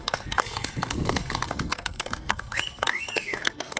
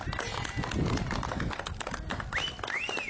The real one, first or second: second